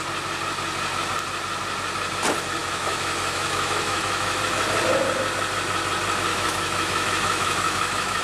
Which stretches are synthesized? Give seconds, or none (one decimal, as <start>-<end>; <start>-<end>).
2.6-4.6; 6.3-8.2